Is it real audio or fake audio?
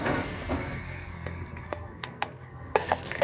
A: fake